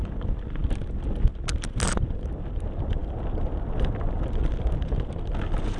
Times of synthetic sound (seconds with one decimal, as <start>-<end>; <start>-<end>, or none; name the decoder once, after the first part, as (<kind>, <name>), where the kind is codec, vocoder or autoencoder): none